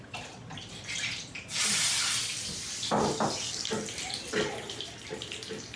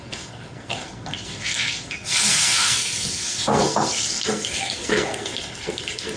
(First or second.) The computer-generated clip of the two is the second